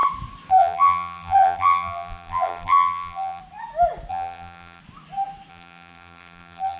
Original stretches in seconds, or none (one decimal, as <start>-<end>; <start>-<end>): 0.0-0.5; 3.4-4.1; 4.8-5.5